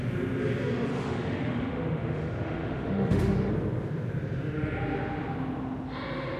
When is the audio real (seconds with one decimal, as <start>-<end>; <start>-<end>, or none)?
0.0-0.9; 3.5-6.4